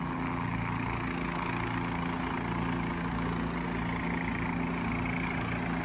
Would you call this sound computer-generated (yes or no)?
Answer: no